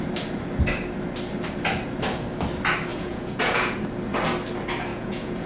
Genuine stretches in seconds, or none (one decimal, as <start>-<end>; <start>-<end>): 0.0-2.9; 3.8-4.9